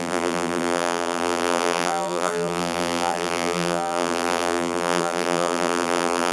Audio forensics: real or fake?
fake